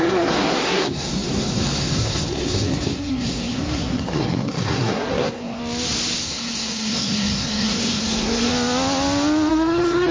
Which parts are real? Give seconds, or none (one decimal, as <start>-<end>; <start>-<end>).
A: 5.6-6.2; 8.5-9.5